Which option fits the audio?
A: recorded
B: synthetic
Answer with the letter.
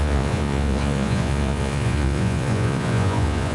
B